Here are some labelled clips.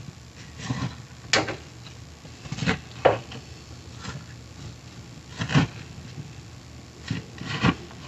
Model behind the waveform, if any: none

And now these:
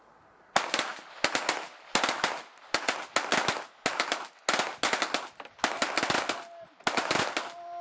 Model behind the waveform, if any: none